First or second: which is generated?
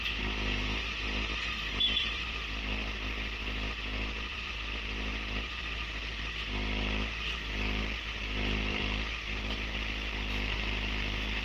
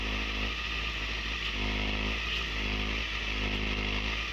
first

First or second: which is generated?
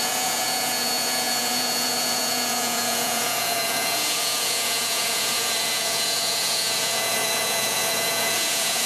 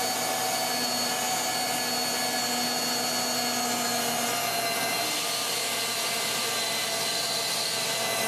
first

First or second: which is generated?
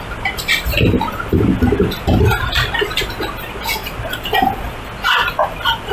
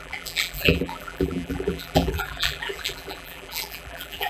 second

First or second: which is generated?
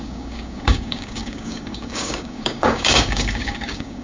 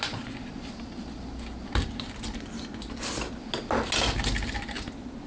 first